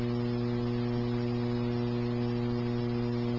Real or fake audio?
real